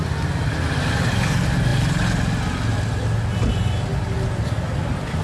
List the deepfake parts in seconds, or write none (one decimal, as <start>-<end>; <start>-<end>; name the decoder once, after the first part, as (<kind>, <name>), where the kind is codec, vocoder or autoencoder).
none

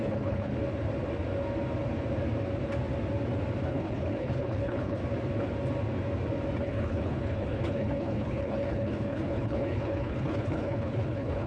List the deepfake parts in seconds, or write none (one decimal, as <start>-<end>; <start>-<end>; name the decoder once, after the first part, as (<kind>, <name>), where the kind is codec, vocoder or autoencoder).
0.0-0.5 (codec, HILCodec); 3.7-5.0; 6.6-11.5